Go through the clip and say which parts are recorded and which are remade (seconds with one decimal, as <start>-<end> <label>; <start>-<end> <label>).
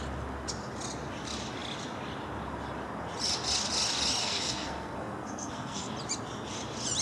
0.0-4.2 recorded; 4.2-5.9 remade; 5.9-7.0 recorded